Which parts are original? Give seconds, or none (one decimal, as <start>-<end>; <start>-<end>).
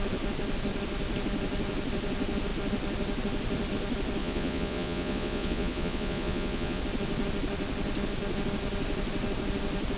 0.0-4.2; 6.8-10.0